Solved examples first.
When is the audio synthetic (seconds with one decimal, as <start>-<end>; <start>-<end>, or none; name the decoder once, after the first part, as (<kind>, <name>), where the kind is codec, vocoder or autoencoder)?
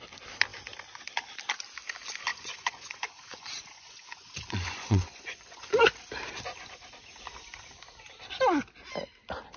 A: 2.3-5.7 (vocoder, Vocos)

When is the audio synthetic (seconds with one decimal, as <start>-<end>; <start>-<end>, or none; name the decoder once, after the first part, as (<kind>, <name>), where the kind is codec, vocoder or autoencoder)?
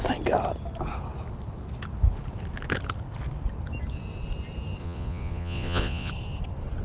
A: 4.8-6.1 (vocoder, Vocos)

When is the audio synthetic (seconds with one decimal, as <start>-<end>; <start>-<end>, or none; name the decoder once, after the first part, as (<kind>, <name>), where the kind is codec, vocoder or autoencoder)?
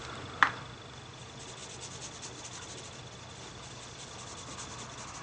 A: none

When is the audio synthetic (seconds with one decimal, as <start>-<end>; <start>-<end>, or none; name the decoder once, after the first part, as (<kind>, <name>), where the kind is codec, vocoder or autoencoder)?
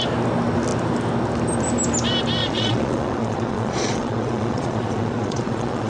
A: 2.4-5.9 (vocoder, Vocos)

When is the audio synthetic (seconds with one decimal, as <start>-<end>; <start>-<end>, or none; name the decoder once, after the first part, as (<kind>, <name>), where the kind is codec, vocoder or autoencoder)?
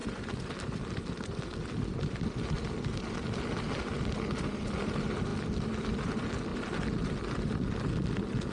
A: 0.0-2.2 (vocoder, BigVGAN v2); 5.3-5.8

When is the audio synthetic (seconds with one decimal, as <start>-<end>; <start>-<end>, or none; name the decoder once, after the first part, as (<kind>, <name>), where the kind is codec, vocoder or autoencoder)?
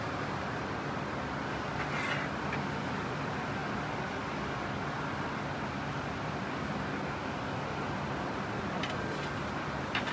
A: none